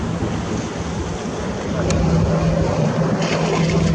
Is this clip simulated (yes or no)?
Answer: no